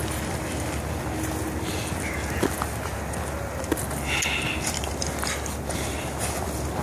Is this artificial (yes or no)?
no